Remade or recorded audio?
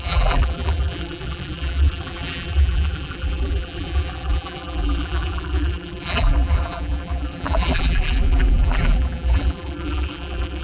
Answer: remade